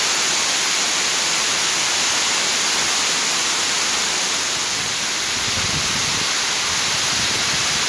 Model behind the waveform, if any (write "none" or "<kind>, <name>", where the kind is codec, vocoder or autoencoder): none